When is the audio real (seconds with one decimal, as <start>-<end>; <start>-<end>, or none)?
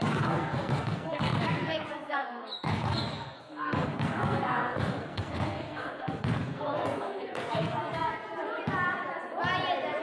8.1-10.0